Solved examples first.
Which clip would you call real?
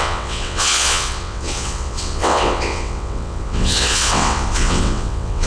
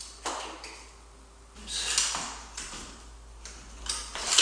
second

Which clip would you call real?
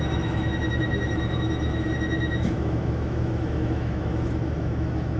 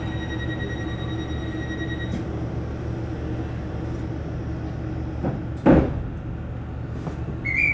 second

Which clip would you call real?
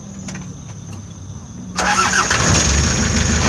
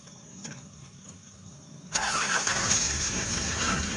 first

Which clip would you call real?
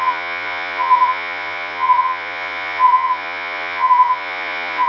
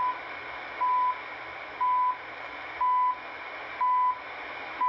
second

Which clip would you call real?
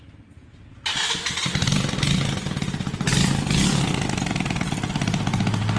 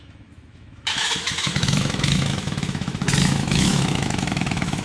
first